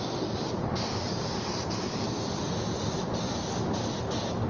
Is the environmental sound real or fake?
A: fake